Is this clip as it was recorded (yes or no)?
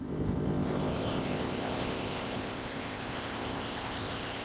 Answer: no